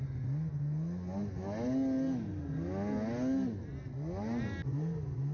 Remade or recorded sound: recorded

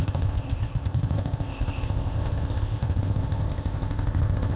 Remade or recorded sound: remade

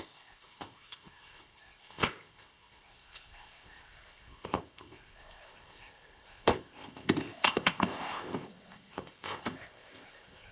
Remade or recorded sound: remade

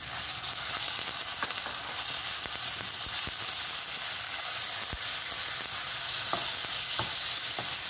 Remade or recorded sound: recorded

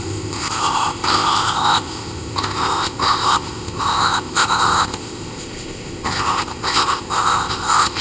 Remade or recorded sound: remade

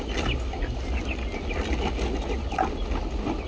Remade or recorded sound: recorded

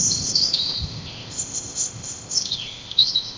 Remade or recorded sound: remade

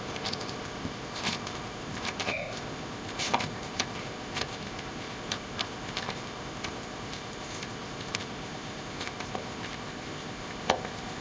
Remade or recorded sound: remade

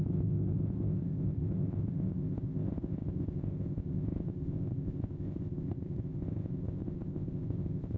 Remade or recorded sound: remade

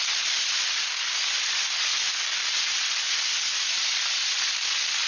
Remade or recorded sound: recorded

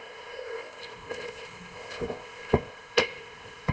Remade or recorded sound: remade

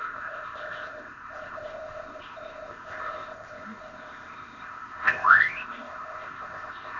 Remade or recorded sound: remade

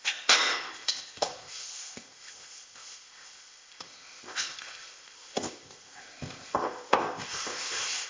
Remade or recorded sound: remade